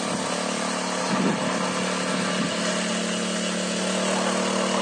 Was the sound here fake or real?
real